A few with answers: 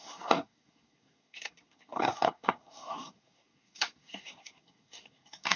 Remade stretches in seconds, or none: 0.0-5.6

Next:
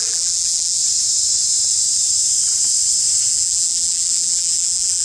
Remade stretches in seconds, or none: 0.0-0.8; 3.3-5.0

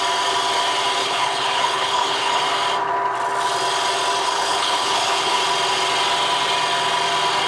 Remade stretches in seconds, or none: 1.0-2.4; 4.2-5.4

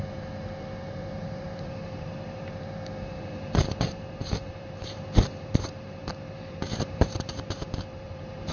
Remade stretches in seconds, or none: 0.0-8.5

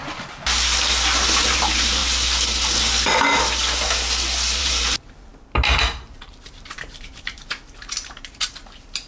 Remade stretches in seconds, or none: 1.5-2.0; 4.6-9.1

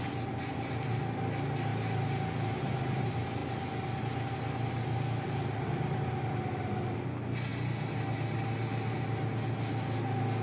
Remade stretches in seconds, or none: none

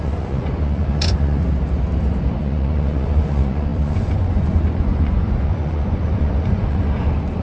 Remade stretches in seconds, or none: 0.0-1.4; 2.4-7.4

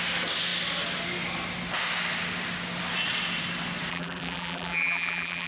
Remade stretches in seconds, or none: 3.9-5.5